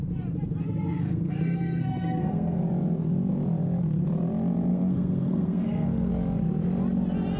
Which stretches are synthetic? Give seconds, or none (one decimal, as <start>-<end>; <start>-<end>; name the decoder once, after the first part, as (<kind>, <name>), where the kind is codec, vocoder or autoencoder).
0.6-2.6 (codec, SNAC); 4.7-6.1